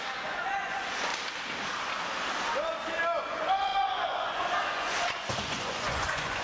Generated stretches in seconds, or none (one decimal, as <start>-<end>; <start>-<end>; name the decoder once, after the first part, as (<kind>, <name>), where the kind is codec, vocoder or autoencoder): 0.0-1.1 (vocoder, Vocos); 3.2-6.4